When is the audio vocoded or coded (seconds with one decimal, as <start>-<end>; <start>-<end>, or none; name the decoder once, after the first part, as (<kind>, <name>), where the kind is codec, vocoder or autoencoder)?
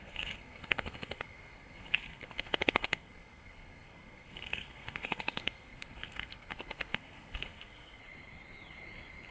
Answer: 0.0-8.0 (codec, SNAC)